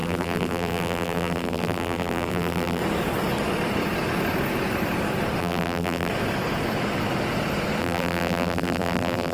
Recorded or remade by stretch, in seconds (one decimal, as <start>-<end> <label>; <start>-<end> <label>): 0.0-2.8 remade; 2.8-5.4 recorded; 5.4-6.1 remade; 6.1-7.8 recorded; 7.8-9.3 remade